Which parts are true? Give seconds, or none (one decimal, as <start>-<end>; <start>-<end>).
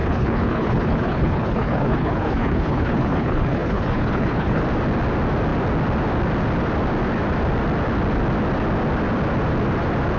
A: 4.6-10.2